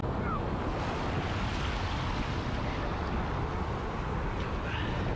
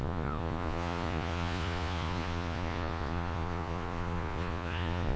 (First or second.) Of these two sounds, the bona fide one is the first